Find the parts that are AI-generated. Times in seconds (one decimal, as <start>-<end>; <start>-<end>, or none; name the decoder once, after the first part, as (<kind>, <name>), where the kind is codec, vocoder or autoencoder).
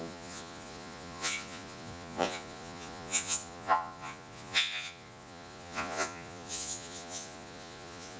0.0-8.2 (vocoder, Vocos)